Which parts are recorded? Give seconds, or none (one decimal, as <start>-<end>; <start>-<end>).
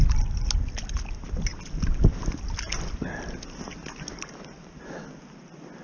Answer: 0.0-5.8